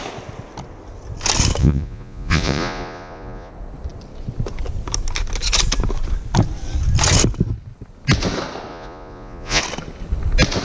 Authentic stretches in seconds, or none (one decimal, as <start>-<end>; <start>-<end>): 0.0-1.6; 3.5-8.7; 9.6-10.6